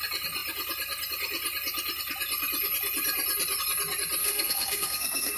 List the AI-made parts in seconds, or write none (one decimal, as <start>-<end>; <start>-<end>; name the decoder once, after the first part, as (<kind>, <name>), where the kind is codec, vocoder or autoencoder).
4.2-5.4 (codec, SNAC)

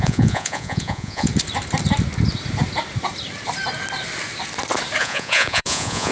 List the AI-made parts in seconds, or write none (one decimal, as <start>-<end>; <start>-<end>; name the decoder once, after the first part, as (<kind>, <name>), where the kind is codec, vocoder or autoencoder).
0.0-1.3 (vocoder, Vocos); 5.0-6.1

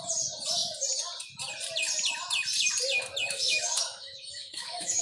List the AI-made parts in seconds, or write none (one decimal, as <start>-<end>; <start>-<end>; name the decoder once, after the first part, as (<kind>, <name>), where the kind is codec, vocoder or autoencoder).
3.2-5.0 (autoencoder, DAC-VAE)

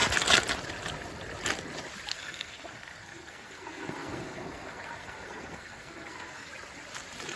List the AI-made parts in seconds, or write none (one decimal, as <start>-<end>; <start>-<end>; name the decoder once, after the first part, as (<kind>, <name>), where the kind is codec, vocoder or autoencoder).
2.1-6.5 (codec, SNAC)

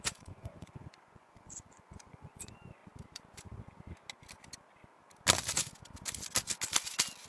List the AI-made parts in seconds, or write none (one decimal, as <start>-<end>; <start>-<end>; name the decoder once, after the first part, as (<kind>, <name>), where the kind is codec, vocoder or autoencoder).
0.0-2.8 (vocoder, Vocos)

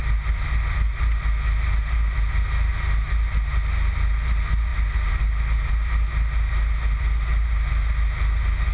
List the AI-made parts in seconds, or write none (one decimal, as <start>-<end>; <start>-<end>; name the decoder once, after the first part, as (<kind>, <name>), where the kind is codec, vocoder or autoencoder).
none

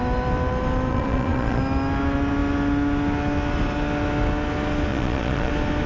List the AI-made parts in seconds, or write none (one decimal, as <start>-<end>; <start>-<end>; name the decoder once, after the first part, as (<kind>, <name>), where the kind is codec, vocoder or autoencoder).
0.9-1.6 (vocoder, Vocos); 4.9-5.5

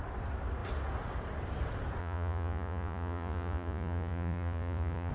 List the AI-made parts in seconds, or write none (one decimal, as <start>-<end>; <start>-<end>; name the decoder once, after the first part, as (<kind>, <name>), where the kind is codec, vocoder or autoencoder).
2.0-5.1 (vocoder, Vocos)